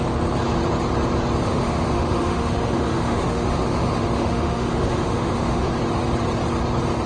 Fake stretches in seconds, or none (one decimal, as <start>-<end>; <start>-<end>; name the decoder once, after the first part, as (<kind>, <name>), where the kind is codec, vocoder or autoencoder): 1.4-5.7 (autoencoder, DAC-VAE)